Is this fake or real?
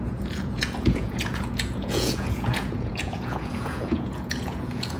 fake